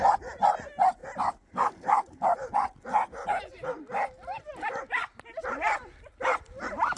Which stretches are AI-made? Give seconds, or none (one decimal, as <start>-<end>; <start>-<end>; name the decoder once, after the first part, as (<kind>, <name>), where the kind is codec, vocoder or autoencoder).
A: none